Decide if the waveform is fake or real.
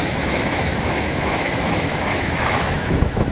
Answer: fake